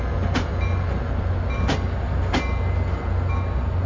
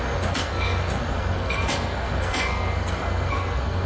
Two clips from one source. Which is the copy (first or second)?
second